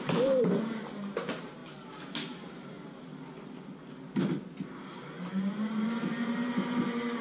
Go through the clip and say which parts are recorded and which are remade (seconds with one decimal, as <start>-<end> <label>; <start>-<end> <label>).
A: 0.0-1.6 remade; 1.6-5.5 recorded; 5.5-7.2 remade